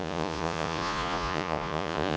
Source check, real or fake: fake